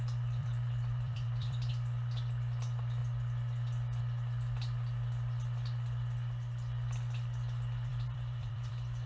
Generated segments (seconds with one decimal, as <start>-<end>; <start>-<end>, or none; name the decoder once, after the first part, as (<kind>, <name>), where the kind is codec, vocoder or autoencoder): 0.4-1.7 (vocoder, BigVGAN v2); 7.9-8.7